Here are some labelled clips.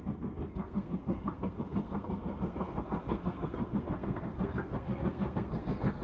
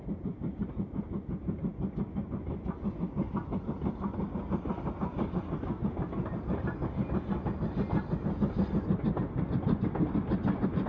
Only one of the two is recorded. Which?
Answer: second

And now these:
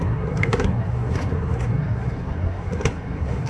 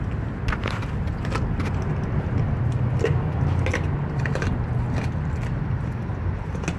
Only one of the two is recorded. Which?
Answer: second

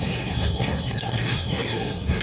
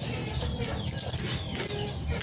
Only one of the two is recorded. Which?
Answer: second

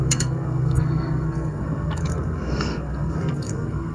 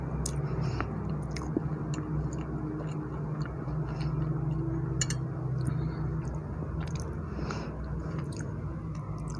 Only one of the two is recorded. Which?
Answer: second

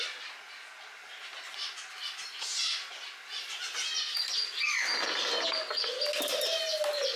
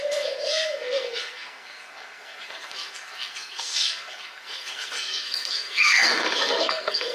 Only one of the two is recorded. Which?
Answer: first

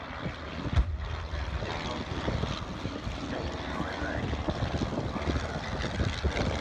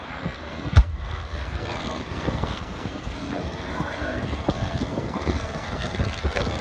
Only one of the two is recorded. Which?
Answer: first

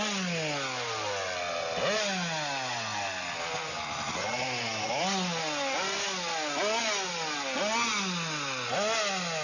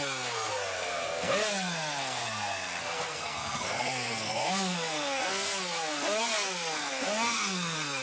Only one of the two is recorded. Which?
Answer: first